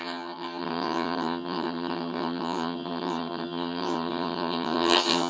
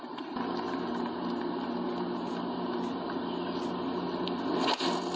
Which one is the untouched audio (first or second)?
second